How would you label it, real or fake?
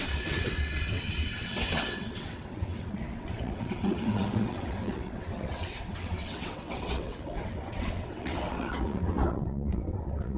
fake